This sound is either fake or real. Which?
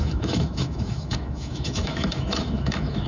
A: fake